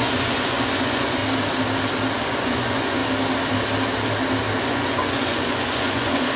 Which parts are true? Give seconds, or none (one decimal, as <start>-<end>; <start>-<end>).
1.2-2.2; 3.0-4.6

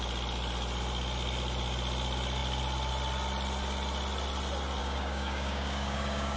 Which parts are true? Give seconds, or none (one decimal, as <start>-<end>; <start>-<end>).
0.0-4.8